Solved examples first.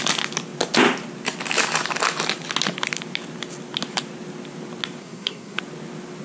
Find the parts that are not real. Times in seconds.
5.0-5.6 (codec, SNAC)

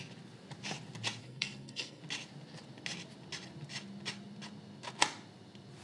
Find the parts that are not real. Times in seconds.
1.2-2.0 (codec, SNAC)

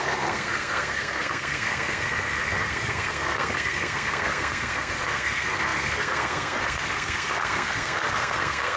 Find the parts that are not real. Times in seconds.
0.0-8.8 (codec, SNAC)